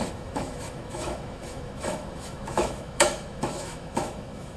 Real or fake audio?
fake